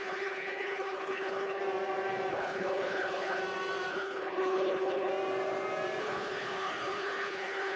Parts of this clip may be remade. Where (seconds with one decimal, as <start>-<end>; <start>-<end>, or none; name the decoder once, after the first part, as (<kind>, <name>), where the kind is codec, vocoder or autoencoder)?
0.0-1.6 (codec, HILCodec); 2.3-3.4; 3.9-5.1; 6.0-7.8